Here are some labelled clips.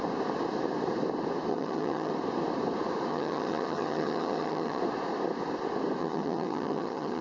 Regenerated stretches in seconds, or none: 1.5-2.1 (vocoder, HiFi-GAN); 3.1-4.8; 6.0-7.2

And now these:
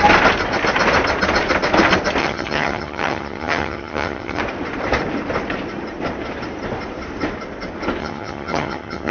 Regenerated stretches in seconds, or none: 2.2-4.4 (vocoder, HiFi-GAN); 8.0-9.1

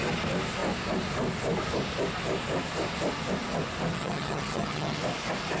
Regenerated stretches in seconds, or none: 3.9-5.0 (vocoder, HiFi-GAN)

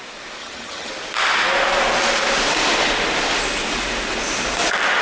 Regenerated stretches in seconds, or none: 0.4-0.9 (vocoder, HiFi-GAN)

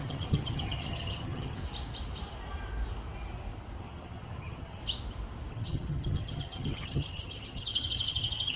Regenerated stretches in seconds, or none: 0.0-1.6 (vocoder, HiFi-GAN); 3.8-4.8; 5.5-8.6

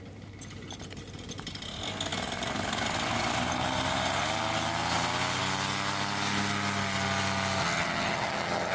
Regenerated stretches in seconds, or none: 7.6-8.7 (vocoder, HiFi-GAN)